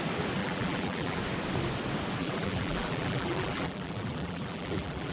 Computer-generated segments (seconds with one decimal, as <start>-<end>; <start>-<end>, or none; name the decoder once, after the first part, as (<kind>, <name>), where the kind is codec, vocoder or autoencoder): 0.4-1.2 (vocoder, BigVGAN v2); 2.2-5.1